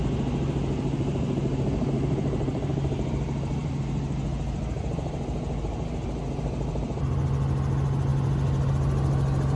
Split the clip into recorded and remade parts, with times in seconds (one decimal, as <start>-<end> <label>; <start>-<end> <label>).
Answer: 0.0-9.6 recorded